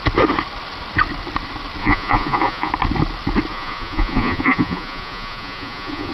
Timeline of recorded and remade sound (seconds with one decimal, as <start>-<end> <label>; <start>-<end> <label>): 0.0-1.8 recorded; 1.8-2.7 remade; 2.7-3.5 recorded; 3.5-6.1 remade